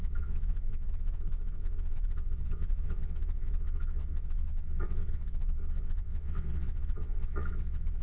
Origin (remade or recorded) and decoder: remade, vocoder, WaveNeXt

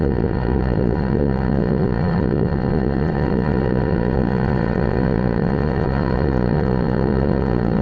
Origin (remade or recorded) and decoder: remade, vocoder, Vocos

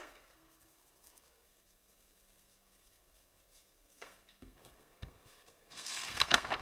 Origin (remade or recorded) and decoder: remade, codec, SNAC